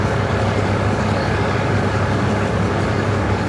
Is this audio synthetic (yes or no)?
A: yes